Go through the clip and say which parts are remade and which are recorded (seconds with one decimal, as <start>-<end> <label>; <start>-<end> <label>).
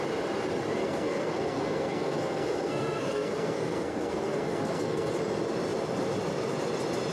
0.0-0.8 recorded; 0.8-5.1 remade; 5.1-7.1 recorded